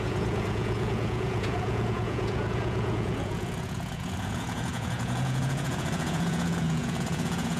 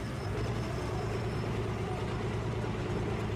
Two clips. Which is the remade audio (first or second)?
first